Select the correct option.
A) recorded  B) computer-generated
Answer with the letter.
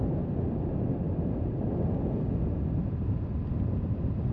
A